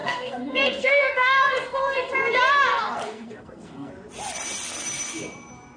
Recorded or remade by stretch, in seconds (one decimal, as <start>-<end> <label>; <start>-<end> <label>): 0.0-2.1 remade; 2.1-2.7 recorded; 2.7-3.9 remade; 3.9-5.8 recorded